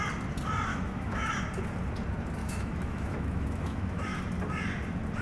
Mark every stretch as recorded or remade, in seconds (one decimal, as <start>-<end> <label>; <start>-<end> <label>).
0.0-0.7 recorded; 0.7-1.3 remade; 1.3-2.4 recorded; 2.4-4.2 remade; 4.2-5.2 recorded